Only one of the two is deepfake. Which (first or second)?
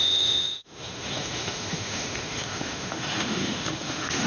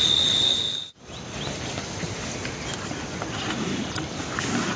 first